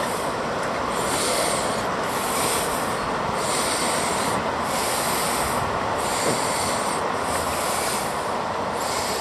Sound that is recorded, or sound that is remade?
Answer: recorded